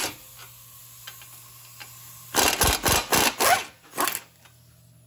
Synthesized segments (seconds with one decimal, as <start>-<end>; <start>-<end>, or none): none